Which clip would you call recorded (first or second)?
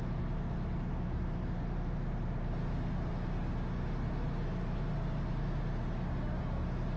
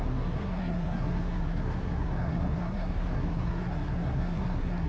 first